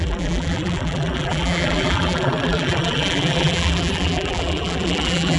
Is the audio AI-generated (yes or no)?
yes